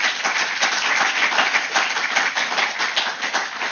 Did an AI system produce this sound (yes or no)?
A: no